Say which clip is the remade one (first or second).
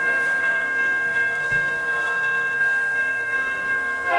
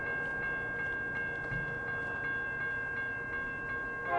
first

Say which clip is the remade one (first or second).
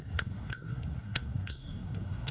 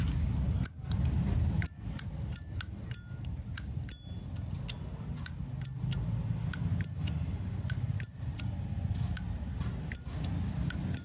first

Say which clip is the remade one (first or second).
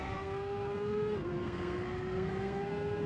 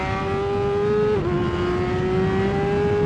first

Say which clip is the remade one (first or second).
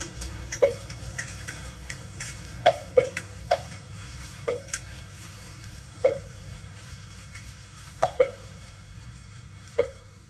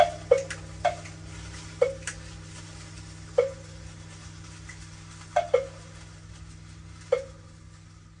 first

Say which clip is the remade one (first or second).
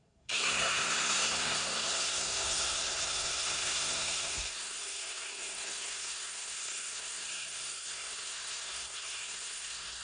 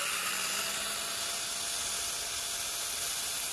first